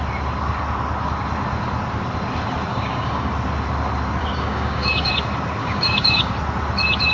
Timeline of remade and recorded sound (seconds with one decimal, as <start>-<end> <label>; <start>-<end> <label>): 0.0-2.7 recorded; 2.7-3.3 remade; 3.3-4.2 recorded; 4.2-5.1 remade; 5.1-5.6 recorded; 5.6-6.3 remade; 6.3-7.1 recorded